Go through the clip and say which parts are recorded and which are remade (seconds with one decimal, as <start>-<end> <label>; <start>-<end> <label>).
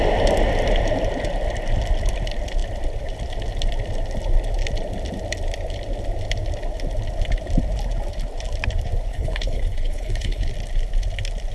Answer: 0.0-9.1 recorded; 9.1-10.5 remade; 10.5-11.5 recorded